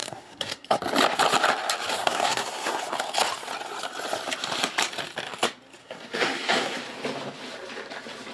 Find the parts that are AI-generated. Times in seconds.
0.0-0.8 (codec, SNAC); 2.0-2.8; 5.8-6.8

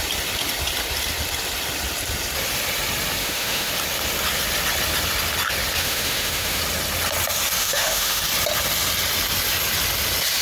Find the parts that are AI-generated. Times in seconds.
3.2-3.7 (autoencoder, DAC-VAE); 5.8-6.6; 7.6-8.2

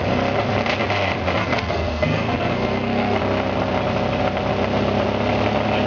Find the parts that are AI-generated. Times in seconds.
1.4-3.2 (codec, SNAC)

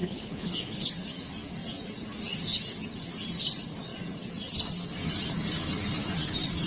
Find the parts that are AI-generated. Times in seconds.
0.0-0.9 (codec, HILCodec)

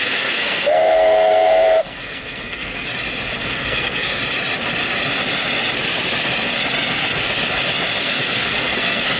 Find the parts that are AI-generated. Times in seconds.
0.0-2.9 (codec, SNAC); 3.4-4.2; 8.0-9.2